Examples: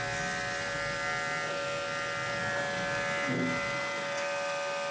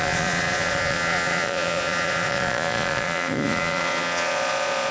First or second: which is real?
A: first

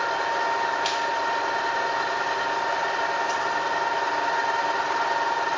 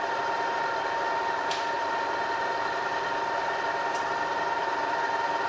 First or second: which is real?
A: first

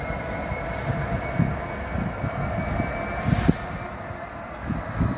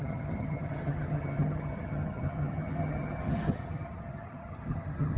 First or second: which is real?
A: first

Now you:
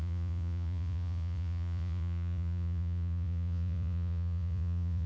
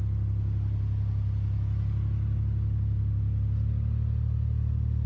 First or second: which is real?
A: second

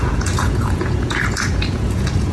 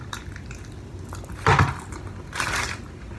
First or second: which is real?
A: second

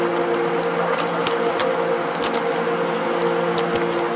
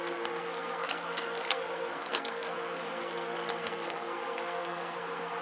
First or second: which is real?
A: first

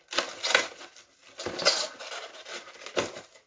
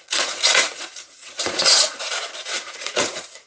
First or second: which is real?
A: first